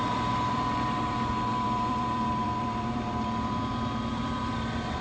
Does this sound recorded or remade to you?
remade